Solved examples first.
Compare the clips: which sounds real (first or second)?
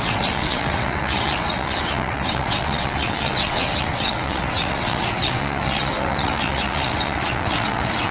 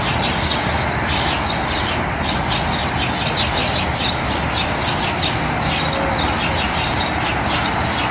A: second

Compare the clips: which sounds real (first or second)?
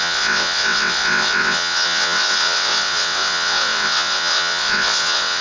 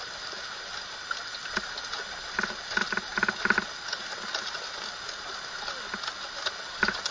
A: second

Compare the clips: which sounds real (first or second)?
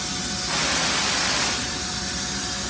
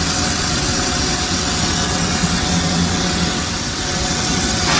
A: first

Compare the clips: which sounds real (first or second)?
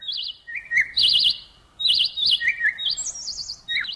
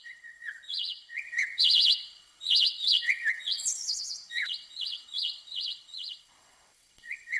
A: first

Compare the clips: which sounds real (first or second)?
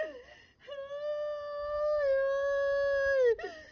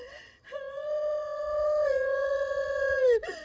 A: first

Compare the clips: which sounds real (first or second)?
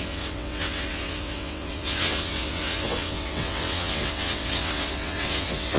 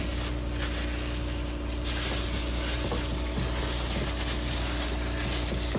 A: second